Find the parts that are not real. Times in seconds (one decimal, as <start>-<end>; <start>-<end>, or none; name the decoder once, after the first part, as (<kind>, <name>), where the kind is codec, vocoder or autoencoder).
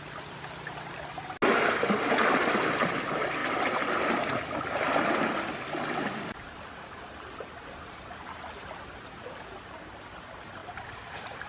10.6-11.5 (vocoder, BigVGAN v2)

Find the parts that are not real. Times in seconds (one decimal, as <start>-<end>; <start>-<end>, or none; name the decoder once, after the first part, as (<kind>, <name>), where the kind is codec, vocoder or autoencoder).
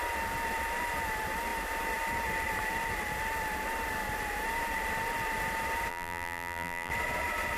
5.9-6.9 (vocoder, BigVGAN v2)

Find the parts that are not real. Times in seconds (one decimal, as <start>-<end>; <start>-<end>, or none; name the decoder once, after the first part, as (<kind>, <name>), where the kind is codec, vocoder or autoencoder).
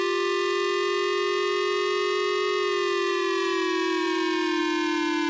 3.1-4.6 (vocoder, BigVGAN v2)